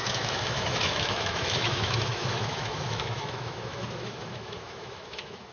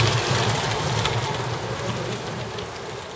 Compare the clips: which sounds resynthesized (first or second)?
first